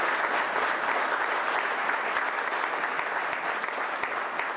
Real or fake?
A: real